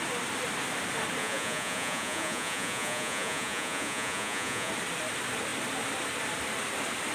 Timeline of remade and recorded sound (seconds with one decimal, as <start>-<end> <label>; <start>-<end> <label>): 0.0-1.2 recorded; 1.2-4.7 remade; 4.7-7.1 recorded